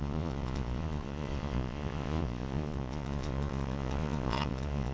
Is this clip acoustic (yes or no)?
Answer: no